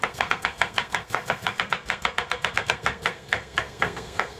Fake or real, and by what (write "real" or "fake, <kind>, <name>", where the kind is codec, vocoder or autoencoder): fake, codec, SNAC